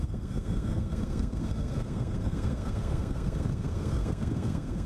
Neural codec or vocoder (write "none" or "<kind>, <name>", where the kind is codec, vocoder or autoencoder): codec, SNAC